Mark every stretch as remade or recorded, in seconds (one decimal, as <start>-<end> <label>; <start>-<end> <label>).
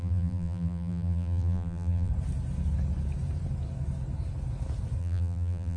0.0-2.1 remade; 2.1-5.0 recorded; 5.0-5.8 remade